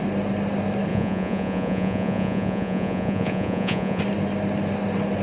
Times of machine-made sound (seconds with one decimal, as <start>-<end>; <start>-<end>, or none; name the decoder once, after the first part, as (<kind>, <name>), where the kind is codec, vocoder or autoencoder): 0.9-4.0 (vocoder, Vocos)